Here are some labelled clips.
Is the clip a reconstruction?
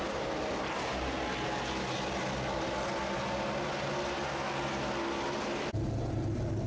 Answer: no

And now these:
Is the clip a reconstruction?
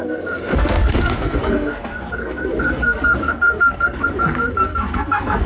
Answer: yes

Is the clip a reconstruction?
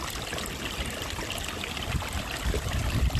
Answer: yes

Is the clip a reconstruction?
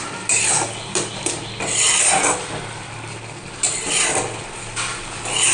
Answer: no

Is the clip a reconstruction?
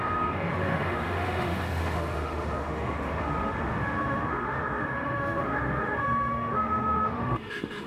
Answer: yes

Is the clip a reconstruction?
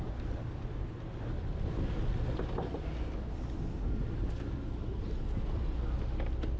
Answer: no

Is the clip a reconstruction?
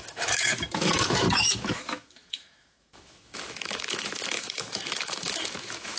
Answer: yes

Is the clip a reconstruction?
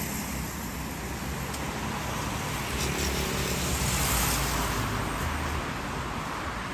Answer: no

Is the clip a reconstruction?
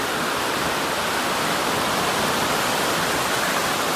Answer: no